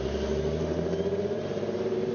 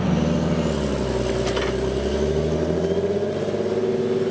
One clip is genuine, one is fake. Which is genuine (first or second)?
second